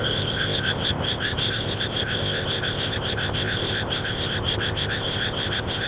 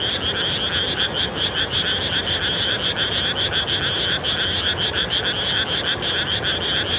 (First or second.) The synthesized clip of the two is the first